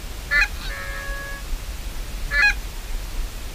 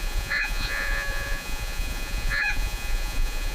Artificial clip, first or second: second